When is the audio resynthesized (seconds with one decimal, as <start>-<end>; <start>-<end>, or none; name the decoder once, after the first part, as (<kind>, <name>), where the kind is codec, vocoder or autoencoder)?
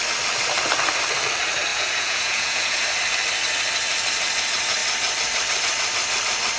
1.7-2.8 (vocoder, Vocos)